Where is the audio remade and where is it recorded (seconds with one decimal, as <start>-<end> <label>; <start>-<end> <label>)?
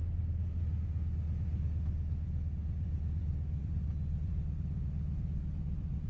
0.0-6.1 recorded